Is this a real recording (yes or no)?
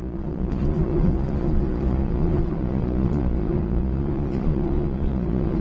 no